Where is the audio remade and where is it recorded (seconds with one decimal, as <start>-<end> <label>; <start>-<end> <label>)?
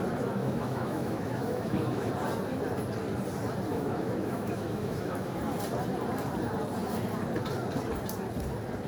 0.0-0.4 recorded; 0.4-2.1 remade; 2.1-3.7 recorded; 3.7-5.4 remade; 5.4-8.9 recorded